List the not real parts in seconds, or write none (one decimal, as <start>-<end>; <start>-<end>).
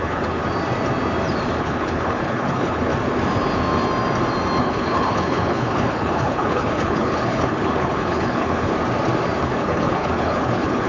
0.0-0.4; 1.6-2.9; 4.6-8.7; 9.4-10.9